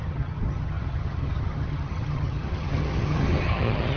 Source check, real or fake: fake